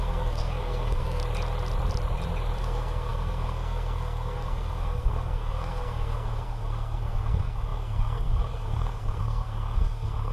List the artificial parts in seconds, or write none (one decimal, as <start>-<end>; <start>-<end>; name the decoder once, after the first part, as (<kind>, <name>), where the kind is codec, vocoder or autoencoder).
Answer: 0.0-1.2 (codec, SNAC); 2.6-10.3